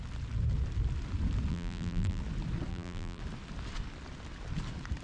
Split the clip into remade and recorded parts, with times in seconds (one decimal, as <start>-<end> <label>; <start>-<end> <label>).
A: 0.0-1.5 recorded; 1.5-2.2 remade; 2.2-2.7 recorded; 2.7-3.2 remade; 3.2-5.0 recorded

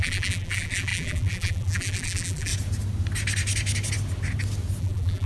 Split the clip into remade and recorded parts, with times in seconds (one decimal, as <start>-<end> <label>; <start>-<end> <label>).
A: 0.0-2.5 remade; 2.5-4.8 recorded; 4.8-5.3 remade

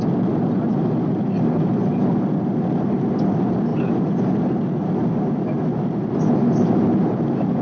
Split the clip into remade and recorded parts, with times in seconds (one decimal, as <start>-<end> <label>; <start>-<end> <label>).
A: 0.0-1.9 remade; 1.9-2.9 recorded; 2.9-3.7 remade; 3.7-7.6 recorded

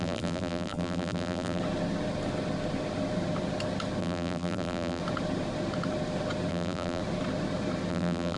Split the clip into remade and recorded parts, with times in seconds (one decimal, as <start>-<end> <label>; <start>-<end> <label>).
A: 0.0-1.6 remade; 1.6-4.0 recorded; 4.0-5.0 remade; 5.0-6.5 recorded; 6.5-7.0 remade; 7.0-7.9 recorded; 7.9-8.4 remade

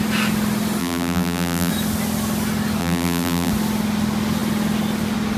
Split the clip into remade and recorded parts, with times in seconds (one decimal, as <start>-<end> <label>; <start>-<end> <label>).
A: 0.0-0.8 recorded; 0.8-1.7 remade; 1.7-2.8 recorded; 2.8-3.5 remade; 3.5-5.4 recorded

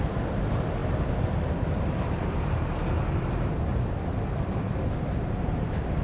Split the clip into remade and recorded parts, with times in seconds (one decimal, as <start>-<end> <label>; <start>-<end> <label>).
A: 0.0-3.7 remade; 3.7-5.3 recorded; 5.3-6.0 remade

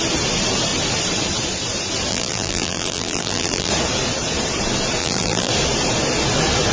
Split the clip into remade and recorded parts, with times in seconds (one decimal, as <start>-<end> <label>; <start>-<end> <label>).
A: 0.0-2.1 recorded; 2.1-3.7 remade; 3.7-5.0 recorded; 5.0-5.5 remade; 5.5-6.7 recorded

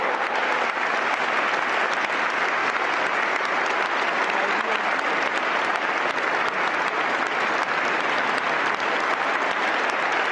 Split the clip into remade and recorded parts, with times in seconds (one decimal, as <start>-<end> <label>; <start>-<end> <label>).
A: 0.0-2.6 remade; 2.6-6.0 recorded; 6.0-10.3 remade